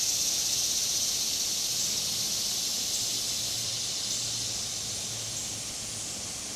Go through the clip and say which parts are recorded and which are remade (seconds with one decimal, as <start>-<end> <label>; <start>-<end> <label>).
0.0-6.6 recorded